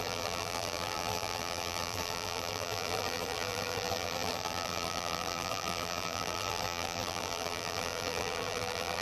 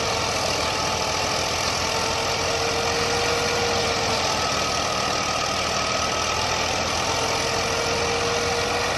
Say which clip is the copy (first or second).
first